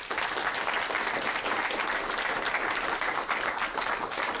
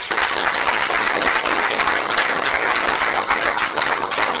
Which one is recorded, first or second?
first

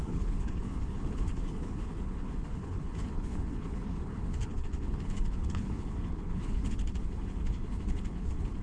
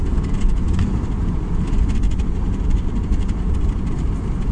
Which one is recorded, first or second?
second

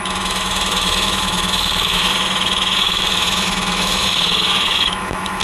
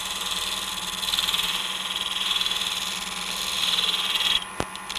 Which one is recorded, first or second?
second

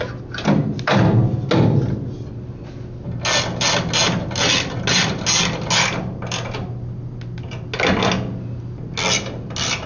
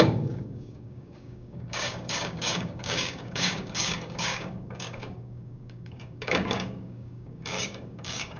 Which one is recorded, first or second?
first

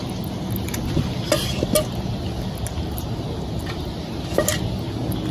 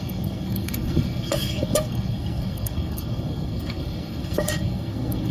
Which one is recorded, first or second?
first